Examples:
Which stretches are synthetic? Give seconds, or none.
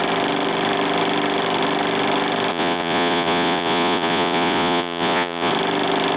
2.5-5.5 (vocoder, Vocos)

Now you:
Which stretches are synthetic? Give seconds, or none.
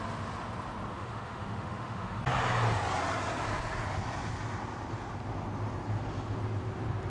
0.9-2.2 (autoencoder, DAC-VAE)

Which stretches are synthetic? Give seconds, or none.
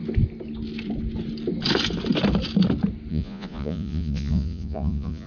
3.1-5.3 (vocoder, Vocos)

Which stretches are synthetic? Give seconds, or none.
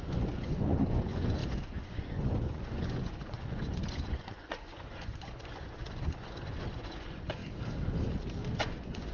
0.0-7.4 (vocoder, Vocos); 8.5-9.1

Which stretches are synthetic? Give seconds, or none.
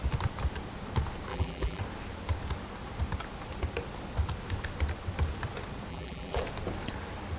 1.3-1.8 (vocoder, BigVGAN v2); 5.9-6.4